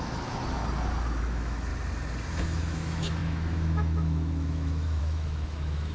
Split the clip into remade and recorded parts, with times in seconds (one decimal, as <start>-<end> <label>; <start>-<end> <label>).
0.0-0.4 remade; 0.4-1.2 recorded; 1.2-1.7 remade; 1.7-2.3 recorded; 2.3-5.9 remade